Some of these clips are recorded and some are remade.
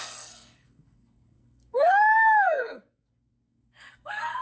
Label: remade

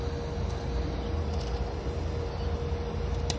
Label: recorded